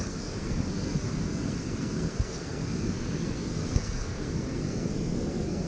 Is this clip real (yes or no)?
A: no